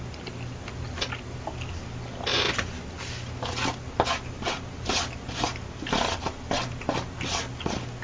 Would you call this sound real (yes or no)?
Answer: yes